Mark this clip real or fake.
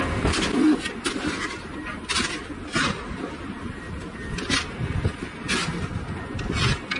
real